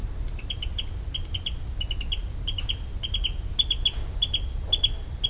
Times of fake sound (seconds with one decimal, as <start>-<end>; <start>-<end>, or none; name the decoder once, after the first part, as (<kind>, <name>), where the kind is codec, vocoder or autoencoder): none